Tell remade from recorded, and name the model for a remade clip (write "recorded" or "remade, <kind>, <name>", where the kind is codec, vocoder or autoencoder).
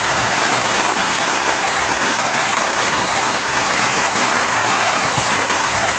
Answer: remade, codec, SNAC